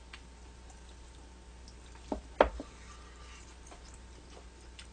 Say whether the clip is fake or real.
real